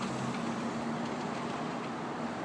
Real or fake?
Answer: real